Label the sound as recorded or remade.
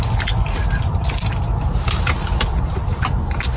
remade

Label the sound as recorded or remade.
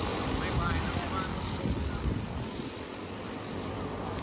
recorded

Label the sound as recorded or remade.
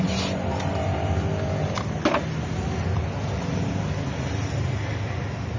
recorded